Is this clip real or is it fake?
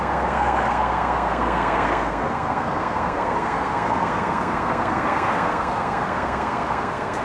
fake